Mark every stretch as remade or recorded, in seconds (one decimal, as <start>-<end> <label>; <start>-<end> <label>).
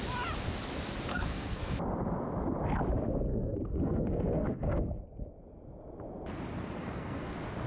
0.0-1.1 recorded; 1.1-1.7 remade; 1.7-3.3 recorded; 3.3-5.0 remade; 5.0-6.8 recorded; 6.8-7.3 remade; 7.3-7.7 recorded